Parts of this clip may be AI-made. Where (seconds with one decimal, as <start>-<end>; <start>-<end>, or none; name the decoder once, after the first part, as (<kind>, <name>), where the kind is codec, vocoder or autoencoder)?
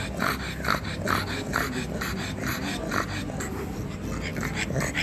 none